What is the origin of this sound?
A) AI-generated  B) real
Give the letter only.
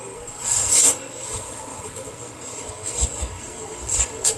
A